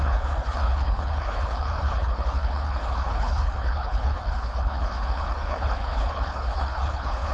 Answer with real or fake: fake